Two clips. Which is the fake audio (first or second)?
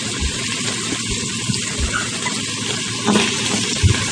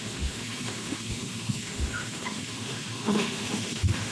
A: second